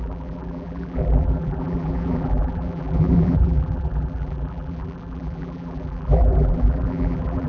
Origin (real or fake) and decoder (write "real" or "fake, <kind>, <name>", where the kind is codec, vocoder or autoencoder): fake, vocoder, BigVGAN v2